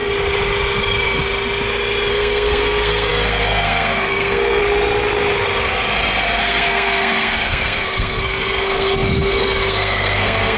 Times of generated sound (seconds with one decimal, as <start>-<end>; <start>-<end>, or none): 2.1-4.6; 6.4-10.6